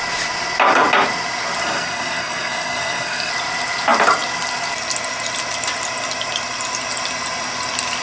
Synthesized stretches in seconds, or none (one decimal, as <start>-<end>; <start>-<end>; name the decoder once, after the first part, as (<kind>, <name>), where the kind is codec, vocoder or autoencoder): 1.6-3.3 (codec, SNAC)